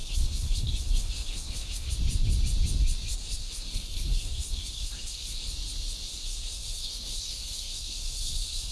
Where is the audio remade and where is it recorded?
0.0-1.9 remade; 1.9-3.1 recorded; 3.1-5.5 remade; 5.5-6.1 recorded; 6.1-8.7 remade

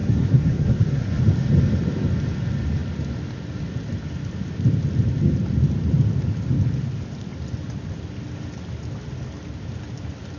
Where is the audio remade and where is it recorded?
0.0-1.2 remade; 1.2-10.4 recorded

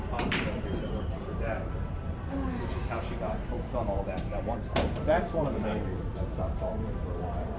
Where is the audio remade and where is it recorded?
0.0-7.6 remade